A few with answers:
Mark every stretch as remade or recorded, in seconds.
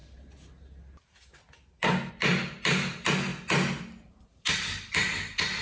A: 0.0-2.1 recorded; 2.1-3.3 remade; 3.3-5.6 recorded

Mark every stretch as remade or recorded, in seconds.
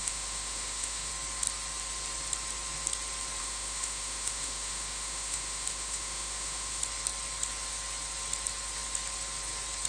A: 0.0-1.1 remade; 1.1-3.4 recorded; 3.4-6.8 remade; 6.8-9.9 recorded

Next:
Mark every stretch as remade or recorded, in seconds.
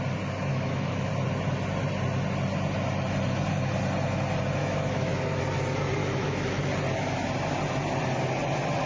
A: 0.0-0.5 recorded; 0.5-1.1 remade; 1.1-4.6 recorded; 4.6-5.4 remade; 5.4-6.0 recorded; 6.0-6.7 remade; 6.7-8.9 recorded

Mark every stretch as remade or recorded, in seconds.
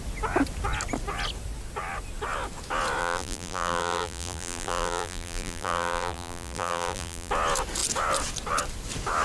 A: 0.0-3.0 recorded; 3.0-7.3 remade; 7.3-9.2 recorded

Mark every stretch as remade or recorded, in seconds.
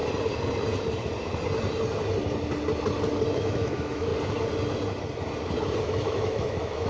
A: 0.0-3.3 recorded; 3.3-4.1 remade; 4.1-5.8 recorded; 5.8-6.9 remade